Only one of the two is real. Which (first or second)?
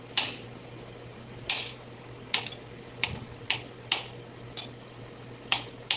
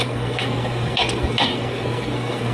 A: first